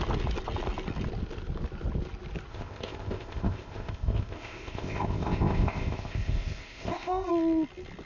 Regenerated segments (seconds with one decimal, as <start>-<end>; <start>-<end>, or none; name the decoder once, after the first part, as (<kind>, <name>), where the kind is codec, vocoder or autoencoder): 2.5-7.3 (codec, ZipCodec)